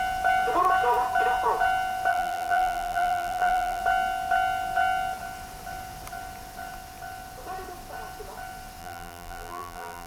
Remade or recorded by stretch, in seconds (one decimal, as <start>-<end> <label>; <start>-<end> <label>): 0.0-2.1 recorded; 2.1-3.8 remade; 3.8-8.8 recorded; 8.8-10.1 remade